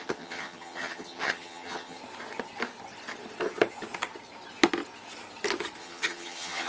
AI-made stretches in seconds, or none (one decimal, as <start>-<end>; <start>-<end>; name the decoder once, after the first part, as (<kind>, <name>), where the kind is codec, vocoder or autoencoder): 0.0-2.0 (vocoder, HiFi-GAN); 5.8-6.7